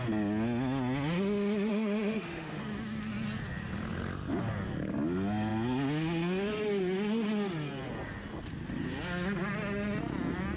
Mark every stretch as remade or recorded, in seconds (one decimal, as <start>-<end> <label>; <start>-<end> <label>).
0.0-1.7 recorded; 1.7-2.6 remade; 2.6-10.6 recorded